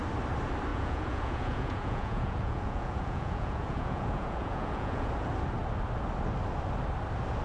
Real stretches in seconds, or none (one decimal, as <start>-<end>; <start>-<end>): 0.0-0.7; 5.1-7.4